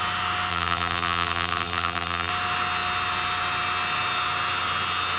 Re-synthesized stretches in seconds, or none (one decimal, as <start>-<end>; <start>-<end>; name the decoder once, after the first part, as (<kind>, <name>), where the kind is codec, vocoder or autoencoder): 0.5-2.3 (vocoder, BigVGAN v2)